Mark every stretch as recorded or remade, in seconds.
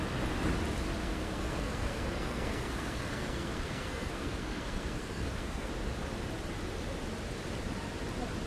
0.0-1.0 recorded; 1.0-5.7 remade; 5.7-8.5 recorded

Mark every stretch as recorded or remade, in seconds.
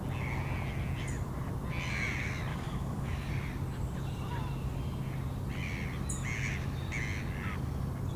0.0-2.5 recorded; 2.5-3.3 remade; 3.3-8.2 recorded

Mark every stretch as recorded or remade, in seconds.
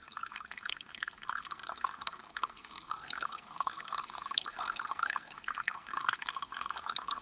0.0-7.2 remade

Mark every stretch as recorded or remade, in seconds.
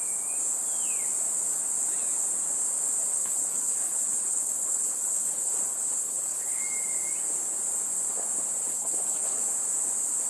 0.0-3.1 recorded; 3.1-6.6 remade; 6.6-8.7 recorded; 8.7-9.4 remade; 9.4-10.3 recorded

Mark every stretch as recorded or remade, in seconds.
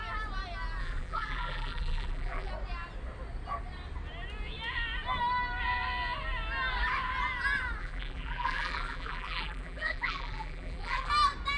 0.0-0.8 recorded; 0.8-2.5 remade; 2.5-7.8 recorded; 7.8-11.1 remade; 11.1-11.6 recorded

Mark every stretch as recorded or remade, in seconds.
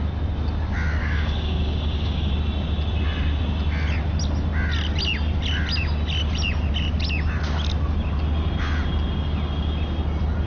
0.0-1.0 recorded; 1.0-2.3 remade; 2.3-10.5 recorded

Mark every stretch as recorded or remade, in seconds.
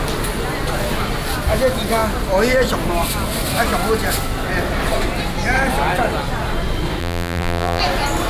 0.0-7.0 recorded; 7.0-7.8 remade; 7.8-8.3 recorded